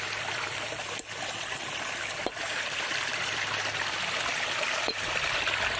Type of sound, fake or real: fake